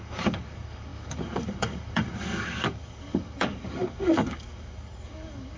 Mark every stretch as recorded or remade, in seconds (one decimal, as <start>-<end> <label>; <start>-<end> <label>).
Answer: 0.0-5.6 remade